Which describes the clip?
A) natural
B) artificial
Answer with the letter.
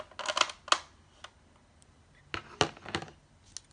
A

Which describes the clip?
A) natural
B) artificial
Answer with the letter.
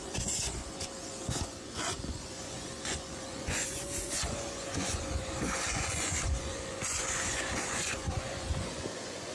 B